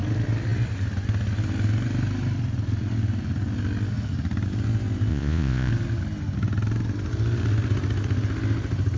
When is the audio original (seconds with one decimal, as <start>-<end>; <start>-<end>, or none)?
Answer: 0.0-5.1; 5.7-9.0